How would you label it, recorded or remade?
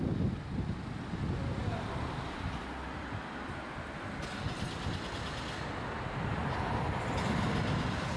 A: recorded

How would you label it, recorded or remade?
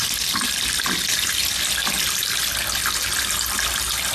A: recorded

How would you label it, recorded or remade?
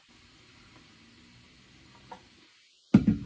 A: recorded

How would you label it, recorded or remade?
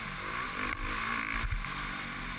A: recorded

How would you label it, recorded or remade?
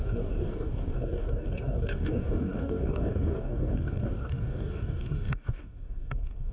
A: remade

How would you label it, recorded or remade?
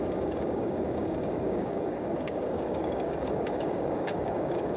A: remade